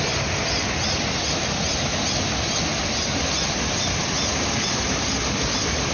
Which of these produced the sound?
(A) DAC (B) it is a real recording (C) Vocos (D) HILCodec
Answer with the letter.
B